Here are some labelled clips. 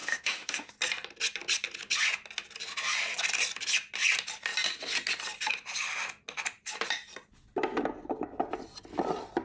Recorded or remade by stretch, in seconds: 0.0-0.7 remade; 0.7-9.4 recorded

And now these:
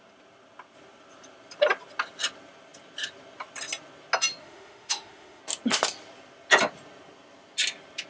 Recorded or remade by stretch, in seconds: 0.0-4.4 recorded; 4.4-5.4 remade; 5.4-8.1 recorded

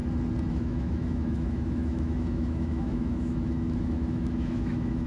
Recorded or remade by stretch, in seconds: 0.0-0.5 recorded; 0.5-5.1 remade

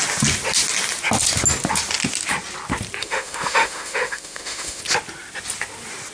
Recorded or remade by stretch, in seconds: 0.0-3.0 recorded; 3.0-4.8 remade; 4.8-6.1 recorded